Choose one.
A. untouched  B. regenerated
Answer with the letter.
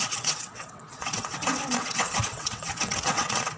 B